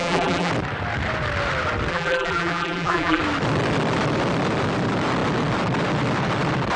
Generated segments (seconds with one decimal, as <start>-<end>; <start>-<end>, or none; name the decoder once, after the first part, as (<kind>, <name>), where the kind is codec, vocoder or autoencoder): 0.0-0.5 (vocoder, BigVGAN v2); 1.9-3.2